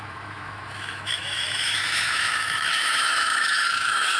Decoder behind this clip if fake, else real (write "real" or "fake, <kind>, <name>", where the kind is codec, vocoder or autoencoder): fake, autoencoder, DAC-VAE